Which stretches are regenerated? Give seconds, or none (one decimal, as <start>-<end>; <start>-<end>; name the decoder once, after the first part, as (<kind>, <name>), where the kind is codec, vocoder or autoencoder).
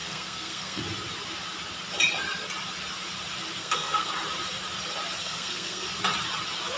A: 0.0-0.8 (codec, SNAC); 3.6-4.1; 5.2-5.9